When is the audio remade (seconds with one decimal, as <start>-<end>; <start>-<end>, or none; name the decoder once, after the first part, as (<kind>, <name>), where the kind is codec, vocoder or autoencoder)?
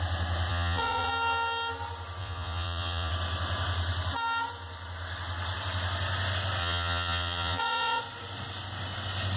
0.5-1.1 (vocoder, Vocos); 2.2-3.1; 6.6-8.0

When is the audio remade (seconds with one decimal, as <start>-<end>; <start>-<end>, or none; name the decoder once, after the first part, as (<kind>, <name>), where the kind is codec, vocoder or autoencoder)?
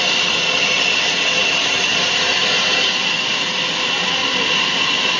none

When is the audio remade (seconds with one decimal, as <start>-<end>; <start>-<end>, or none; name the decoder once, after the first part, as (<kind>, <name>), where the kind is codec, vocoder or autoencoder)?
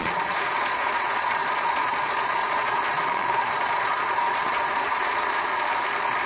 0.0-5.5 (vocoder, Vocos)